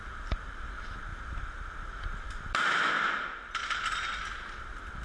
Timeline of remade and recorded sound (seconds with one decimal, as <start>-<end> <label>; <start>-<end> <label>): 0.0-5.0 recorded